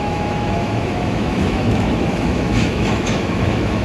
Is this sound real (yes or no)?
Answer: no